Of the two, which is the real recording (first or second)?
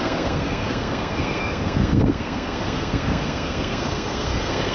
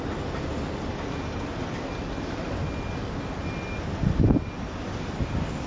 second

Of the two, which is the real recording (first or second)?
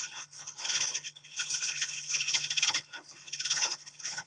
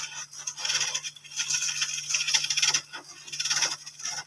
second